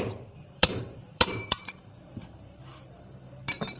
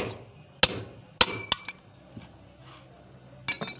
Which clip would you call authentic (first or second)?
second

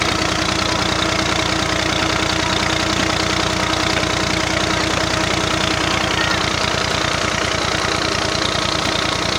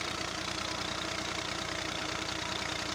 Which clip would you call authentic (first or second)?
first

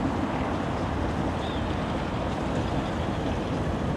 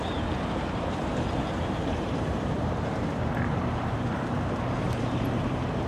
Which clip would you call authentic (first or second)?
first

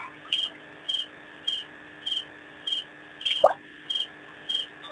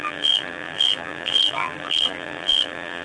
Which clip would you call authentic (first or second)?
first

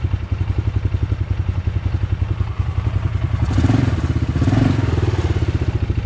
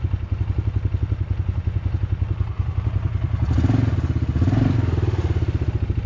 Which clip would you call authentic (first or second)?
second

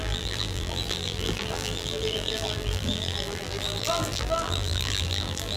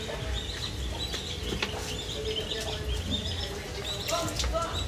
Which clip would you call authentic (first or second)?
second